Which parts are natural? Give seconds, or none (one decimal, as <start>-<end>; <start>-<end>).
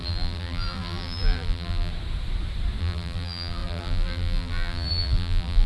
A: 1.9-2.8